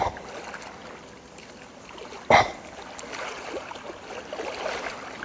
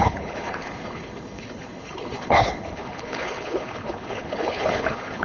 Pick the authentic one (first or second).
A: first